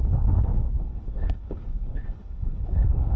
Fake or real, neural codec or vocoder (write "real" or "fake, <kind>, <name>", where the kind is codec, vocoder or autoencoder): fake, codec, HILCodec